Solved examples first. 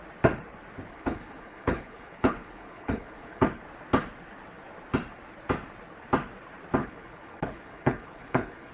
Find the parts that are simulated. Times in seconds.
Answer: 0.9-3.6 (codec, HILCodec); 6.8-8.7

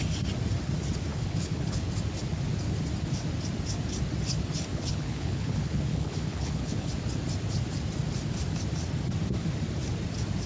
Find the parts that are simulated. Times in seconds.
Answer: 1.1-1.9 (codec, HILCodec); 4.7-6.9

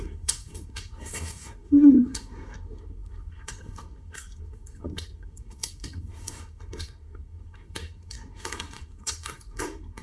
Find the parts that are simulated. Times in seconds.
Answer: 0.0-10.0 (codec, SNAC)